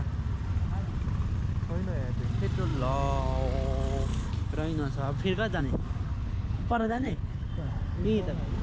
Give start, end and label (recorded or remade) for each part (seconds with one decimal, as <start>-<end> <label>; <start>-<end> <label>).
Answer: 0.0-6.1 recorded; 6.1-7.5 remade; 7.5-8.6 recorded